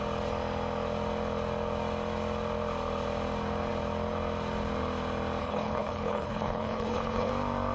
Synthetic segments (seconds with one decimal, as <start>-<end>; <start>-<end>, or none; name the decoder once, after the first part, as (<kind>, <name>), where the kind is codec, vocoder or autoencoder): 5.4-7.3 (codec, HILCodec)